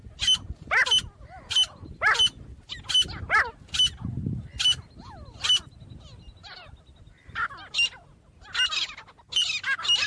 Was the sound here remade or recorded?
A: recorded